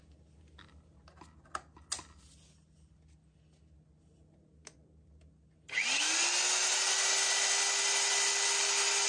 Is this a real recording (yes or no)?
yes